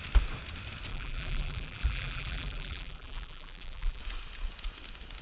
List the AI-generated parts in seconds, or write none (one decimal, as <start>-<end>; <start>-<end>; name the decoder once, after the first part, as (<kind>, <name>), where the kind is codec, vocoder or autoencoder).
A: 0.9-4.0 (vocoder, BigVGAN v2)

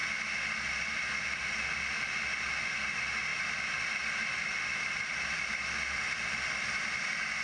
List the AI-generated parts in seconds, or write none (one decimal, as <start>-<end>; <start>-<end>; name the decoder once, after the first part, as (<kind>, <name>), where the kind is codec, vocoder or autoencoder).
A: 3.3-6.9 (vocoder, BigVGAN v2)